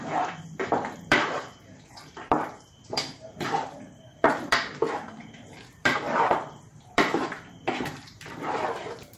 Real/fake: fake